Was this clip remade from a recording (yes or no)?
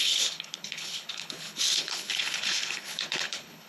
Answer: yes